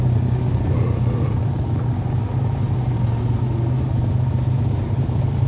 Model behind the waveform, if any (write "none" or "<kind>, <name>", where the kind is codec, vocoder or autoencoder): none